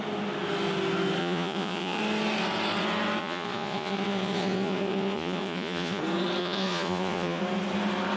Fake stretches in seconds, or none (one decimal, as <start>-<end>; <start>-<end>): 1.2-2.0; 3.2-6.0; 6.4-7.4